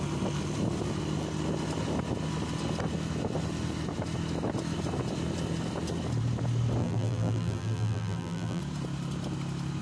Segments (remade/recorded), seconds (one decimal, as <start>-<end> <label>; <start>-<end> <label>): 0.0-6.8 recorded; 6.8-8.6 remade; 8.6-9.8 recorded